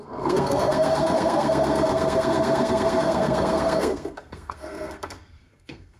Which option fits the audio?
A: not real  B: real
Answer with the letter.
A